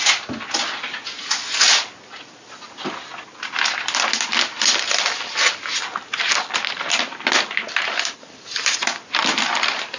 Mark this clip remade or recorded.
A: recorded